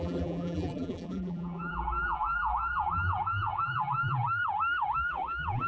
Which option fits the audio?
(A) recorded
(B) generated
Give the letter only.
B